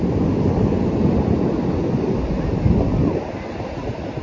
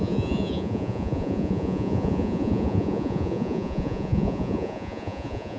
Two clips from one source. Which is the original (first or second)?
first